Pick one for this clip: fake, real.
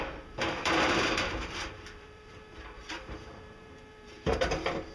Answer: fake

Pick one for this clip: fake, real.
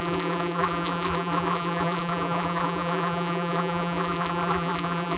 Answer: fake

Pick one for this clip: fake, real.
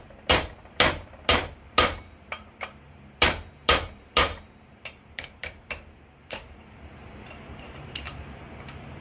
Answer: fake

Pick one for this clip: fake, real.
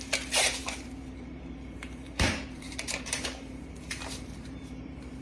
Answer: fake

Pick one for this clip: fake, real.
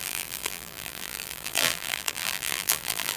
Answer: fake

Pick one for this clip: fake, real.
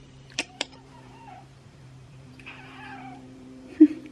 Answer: fake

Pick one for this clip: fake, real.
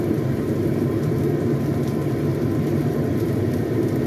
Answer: fake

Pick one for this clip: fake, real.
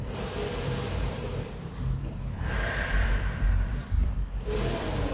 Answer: fake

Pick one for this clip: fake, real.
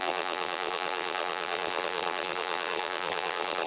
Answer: fake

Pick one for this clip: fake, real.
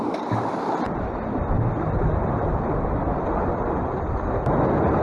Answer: real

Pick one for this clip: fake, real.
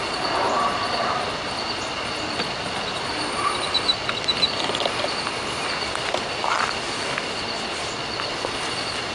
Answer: real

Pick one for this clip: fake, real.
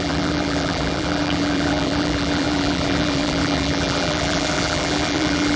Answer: fake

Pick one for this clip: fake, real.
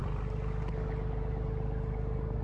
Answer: real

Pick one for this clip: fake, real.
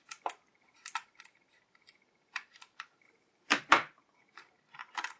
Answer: fake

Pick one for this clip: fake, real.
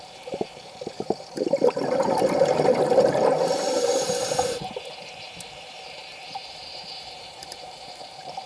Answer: fake